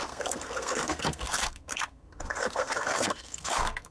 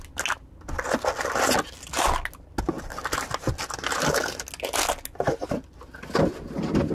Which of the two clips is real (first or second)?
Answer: second